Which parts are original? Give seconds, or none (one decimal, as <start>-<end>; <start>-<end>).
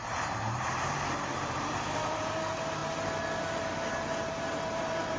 2.8-3.9